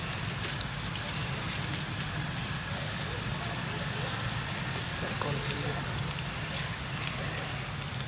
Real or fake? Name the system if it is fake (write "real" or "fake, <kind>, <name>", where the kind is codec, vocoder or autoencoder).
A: real